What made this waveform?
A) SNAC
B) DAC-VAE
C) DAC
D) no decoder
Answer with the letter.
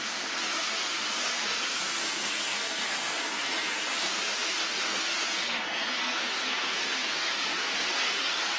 A